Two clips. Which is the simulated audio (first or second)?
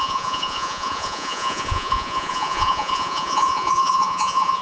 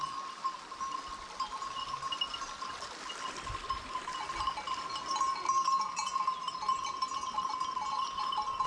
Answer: first